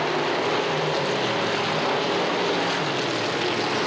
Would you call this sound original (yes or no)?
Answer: yes